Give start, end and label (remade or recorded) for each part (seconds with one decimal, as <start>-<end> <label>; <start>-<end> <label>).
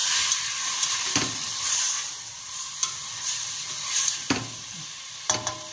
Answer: 0.0-5.7 recorded